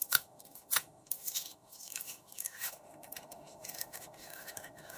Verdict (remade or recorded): remade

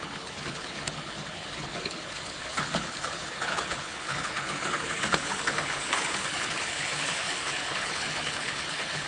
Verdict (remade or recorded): remade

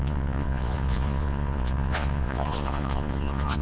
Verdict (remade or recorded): remade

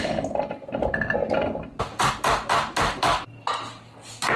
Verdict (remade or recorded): recorded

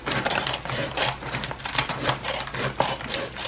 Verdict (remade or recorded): remade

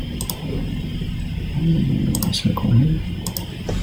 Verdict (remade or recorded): recorded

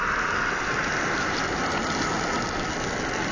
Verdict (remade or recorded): recorded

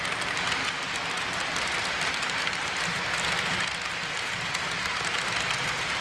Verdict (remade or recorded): recorded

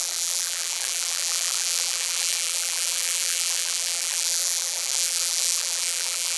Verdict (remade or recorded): remade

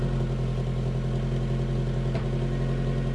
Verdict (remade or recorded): recorded